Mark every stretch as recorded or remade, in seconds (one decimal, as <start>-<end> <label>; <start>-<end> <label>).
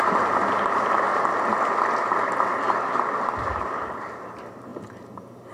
0.0-1.1 remade; 1.1-3.4 recorded; 3.4-4.7 remade; 4.7-5.5 recorded